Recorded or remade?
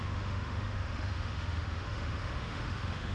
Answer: remade